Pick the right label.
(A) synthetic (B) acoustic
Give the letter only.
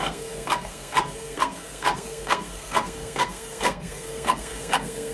A